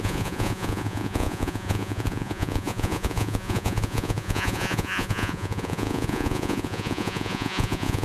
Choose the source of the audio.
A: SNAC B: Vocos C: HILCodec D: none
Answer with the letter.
B